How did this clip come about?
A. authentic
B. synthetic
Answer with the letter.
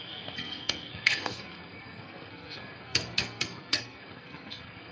B